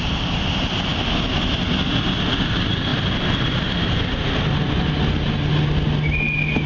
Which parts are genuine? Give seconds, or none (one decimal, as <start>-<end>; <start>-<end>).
0.0-6.7